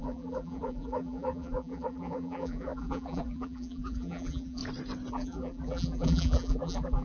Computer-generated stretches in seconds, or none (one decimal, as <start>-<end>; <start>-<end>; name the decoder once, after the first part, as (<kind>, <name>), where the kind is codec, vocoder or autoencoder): 0.0-4.6 (vocoder, BigVGAN v2); 5.1-7.0